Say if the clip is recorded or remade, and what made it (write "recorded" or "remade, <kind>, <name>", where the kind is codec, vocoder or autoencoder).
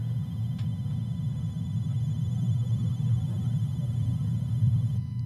recorded